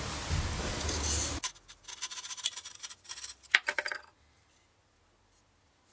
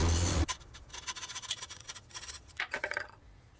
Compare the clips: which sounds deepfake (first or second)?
second